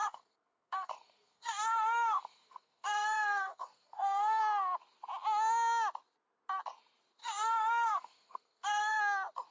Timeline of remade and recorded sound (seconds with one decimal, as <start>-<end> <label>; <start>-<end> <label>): 0.0-4.4 remade; 4.4-7.2 recorded; 7.2-9.0 remade; 9.0-9.5 recorded